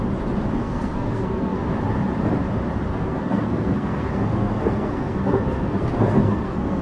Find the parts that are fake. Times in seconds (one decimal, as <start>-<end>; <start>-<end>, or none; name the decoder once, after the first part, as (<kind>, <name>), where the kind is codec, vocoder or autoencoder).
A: 0.6-1.6 (codec, SNAC); 2.9-6.8

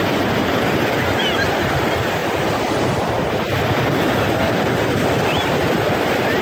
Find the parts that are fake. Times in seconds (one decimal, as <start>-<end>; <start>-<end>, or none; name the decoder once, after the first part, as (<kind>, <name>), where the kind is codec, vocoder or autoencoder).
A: 0.4-1.0 (vocoder, BigVGAN v2)

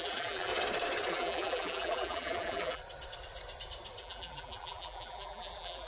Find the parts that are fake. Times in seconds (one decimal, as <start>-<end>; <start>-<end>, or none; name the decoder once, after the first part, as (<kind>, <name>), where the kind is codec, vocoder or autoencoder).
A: 0.0-0.5 (vocoder, BigVGAN v2); 1.1-2.8; 4.0-5.9

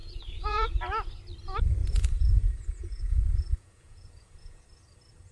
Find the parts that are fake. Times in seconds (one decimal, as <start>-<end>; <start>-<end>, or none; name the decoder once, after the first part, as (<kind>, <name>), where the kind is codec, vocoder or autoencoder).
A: 0.0-0.7 (vocoder, Vocos); 1.8-4.6